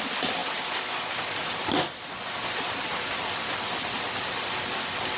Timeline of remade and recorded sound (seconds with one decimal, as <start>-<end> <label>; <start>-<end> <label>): 0.0-5.2 recorded

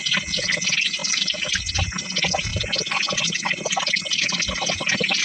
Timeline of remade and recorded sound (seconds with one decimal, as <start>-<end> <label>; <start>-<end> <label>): 0.0-1.0 recorded; 1.0-1.6 remade; 1.6-5.2 recorded

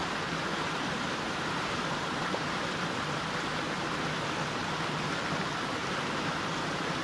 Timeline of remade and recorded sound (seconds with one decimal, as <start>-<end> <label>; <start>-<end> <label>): 0.0-2.6 remade; 2.6-7.0 recorded

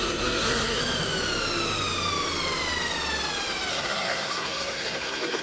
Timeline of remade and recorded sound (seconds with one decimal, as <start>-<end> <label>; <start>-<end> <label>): 0.0-0.8 remade; 0.8-3.7 recorded; 3.7-5.4 remade

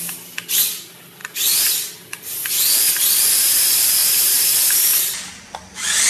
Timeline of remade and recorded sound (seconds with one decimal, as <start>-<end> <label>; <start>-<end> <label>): 0.0-4.0 recorded; 4.0-4.7 remade; 4.7-6.1 recorded

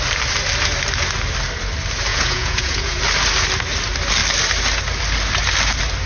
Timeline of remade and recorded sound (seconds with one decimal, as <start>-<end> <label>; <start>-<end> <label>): 0.0-2.1 recorded; 2.1-3.0 remade; 3.0-6.1 recorded